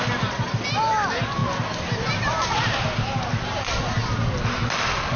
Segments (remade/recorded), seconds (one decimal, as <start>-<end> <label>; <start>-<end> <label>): 0.0-5.2 recorded